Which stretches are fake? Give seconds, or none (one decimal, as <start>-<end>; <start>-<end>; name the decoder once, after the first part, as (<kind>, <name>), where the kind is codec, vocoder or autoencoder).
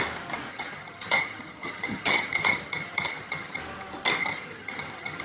0.5-3.6 (vocoder, HiFi-GAN); 4.2-5.2